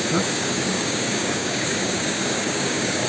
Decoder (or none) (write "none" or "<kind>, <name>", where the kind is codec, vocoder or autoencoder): codec, DAC